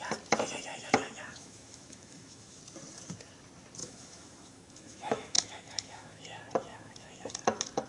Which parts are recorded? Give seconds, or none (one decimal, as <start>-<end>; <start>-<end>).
0.0-0.7; 2.6-3.8; 6.2-6.7; 7.3-7.9